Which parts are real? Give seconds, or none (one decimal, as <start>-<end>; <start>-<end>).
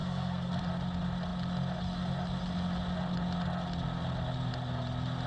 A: 0.6-5.3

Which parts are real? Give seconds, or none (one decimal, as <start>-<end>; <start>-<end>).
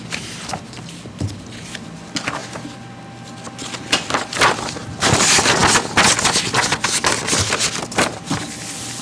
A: 0.0-9.0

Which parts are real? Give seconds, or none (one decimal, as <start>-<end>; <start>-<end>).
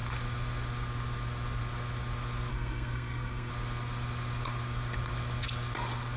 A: 0.0-2.5; 3.5-6.2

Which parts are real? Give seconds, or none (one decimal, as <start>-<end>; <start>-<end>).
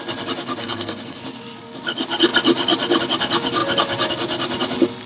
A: 0.0-0.6; 1.2-5.1